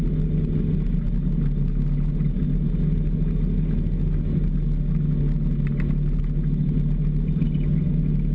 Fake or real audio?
real